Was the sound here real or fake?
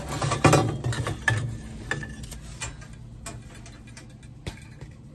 real